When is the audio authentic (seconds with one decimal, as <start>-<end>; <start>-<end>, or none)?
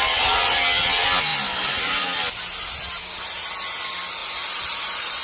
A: 0.0-4.2